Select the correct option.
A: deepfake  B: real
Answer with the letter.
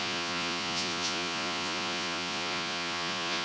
A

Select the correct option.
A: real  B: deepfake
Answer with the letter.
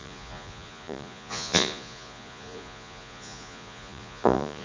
B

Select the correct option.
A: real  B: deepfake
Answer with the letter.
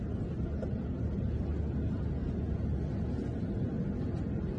A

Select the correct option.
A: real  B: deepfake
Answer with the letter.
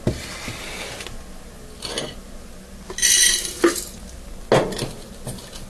A